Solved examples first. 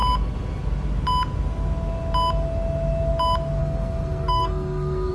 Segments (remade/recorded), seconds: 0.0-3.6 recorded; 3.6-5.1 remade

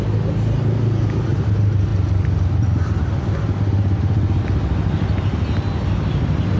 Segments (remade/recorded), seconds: 0.0-6.6 recorded

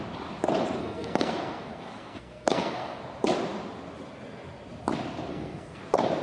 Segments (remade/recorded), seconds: 0.0-0.8 recorded; 0.8-3.0 remade; 3.0-5.3 recorded; 5.3-5.8 remade; 5.8-6.2 recorded

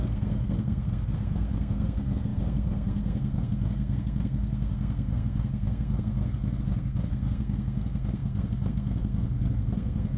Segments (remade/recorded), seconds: 0.0-10.2 remade

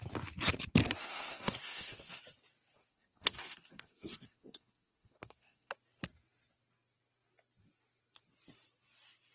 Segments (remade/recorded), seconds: 0.0-0.8 recorded; 0.8-2.2 remade; 2.2-2.9 recorded; 2.9-5.7 remade; 5.7-9.3 recorded

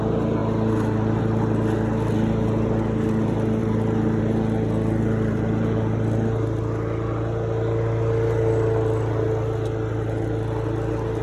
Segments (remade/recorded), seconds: 0.0-11.2 recorded

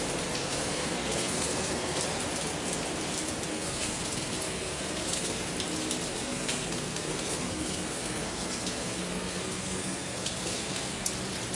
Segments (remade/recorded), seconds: 0.0-0.4 recorded; 0.4-2.0 remade; 2.0-3.5 recorded; 3.5-5.5 remade; 5.5-6.1 recorded; 6.1-11.1 remade; 11.1-11.6 recorded